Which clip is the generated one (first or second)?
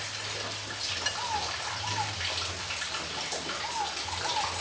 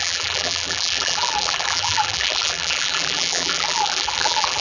second